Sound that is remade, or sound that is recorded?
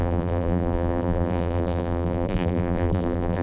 remade